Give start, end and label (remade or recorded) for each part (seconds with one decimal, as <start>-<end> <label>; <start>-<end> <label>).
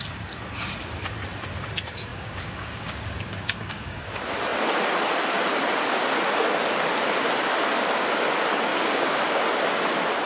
0.0-2.1 recorded; 2.1-4.0 remade; 4.0-8.7 recorded; 8.7-9.4 remade; 9.4-10.3 recorded